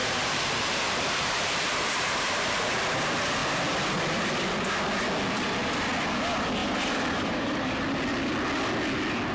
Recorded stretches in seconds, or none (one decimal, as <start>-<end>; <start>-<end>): 2.8-6.6; 7.8-9.3